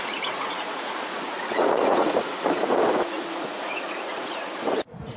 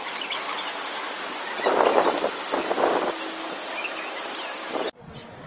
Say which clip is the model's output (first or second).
first